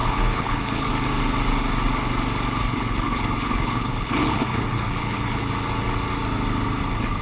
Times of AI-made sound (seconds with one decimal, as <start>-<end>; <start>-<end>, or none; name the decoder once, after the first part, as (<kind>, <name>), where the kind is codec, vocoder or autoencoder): 0.0-0.9 (codec, HILCodec); 2.6-5.5